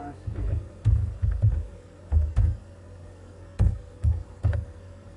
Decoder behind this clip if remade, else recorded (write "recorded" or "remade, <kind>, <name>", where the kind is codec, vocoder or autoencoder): remade, codec, SNAC